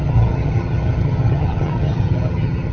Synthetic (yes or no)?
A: yes